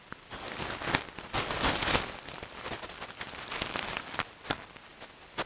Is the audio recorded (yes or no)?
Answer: yes